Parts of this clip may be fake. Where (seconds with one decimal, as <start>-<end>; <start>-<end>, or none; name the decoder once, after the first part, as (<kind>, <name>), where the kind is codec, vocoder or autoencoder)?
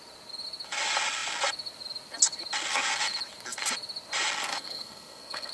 4.5-5.5 (codec, SNAC)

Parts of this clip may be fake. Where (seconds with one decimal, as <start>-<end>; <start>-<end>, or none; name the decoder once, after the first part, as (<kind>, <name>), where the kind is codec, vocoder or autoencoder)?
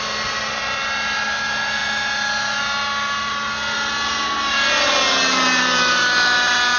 none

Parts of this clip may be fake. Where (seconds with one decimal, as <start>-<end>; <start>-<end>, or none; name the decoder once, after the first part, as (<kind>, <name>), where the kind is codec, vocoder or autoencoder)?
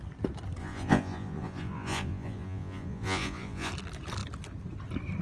0.6-3.7 (vocoder, Vocos)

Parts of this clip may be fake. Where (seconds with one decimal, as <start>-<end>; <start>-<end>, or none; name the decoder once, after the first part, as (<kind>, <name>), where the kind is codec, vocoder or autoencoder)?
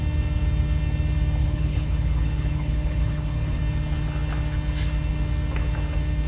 1.4-3.6 (codec, HILCodec)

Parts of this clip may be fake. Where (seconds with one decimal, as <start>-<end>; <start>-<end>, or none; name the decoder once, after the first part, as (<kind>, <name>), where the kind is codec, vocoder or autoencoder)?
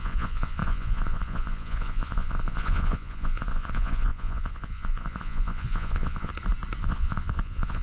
0.0-6.3 (vocoder, Vocos); 6.8-7.8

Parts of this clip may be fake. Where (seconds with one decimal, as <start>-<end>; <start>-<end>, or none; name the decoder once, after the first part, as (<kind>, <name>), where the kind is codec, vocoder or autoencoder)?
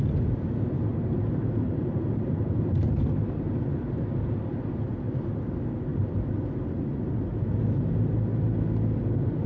0.9-4.4 (vocoder, BigVGAN v2)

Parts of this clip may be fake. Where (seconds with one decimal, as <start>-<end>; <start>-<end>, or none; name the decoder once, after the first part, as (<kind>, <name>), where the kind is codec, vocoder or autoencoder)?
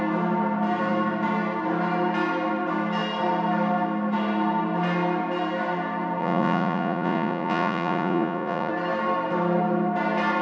6.2-8.7 (vocoder, Vocos)